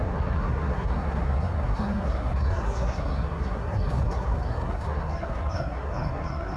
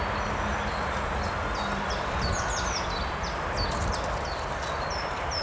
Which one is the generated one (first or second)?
first